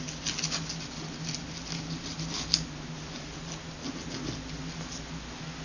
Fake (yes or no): no